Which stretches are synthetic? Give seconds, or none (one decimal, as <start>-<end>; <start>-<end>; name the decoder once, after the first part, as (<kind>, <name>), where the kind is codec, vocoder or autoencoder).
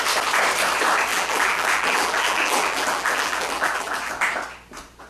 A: 1.1-4.1 (vocoder, BigVGAN v2)